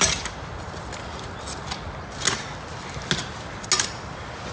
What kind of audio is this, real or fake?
real